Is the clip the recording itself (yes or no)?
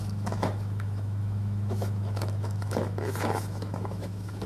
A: no